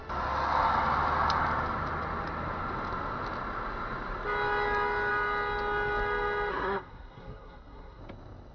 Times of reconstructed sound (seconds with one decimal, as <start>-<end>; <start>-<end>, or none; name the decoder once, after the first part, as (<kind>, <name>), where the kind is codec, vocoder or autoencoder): 6.5-8.0 (codec, SNAC)